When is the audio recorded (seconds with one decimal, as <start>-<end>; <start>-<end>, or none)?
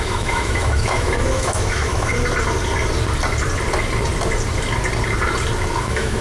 2.1-5.8